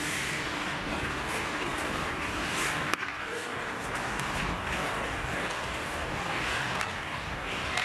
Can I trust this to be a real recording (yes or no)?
no